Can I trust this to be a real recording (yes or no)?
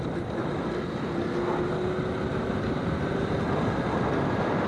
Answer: yes